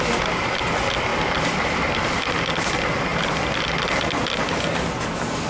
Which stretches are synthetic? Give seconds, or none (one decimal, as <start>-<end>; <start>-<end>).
1.1-2.3